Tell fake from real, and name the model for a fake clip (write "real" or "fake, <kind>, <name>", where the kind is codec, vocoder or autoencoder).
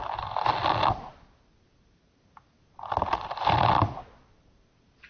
real